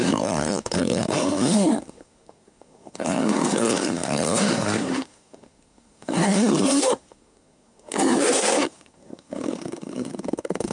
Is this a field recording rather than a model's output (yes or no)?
no